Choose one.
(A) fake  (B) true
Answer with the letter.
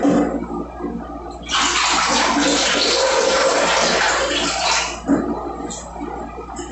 B